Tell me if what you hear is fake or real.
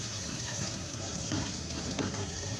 fake